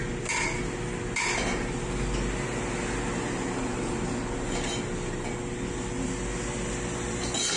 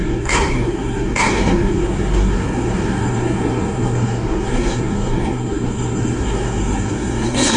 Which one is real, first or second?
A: first